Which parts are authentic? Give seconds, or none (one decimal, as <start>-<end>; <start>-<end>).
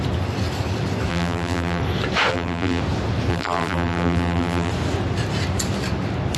0.0-1.1; 1.8-2.3; 2.8-3.3; 4.7-6.4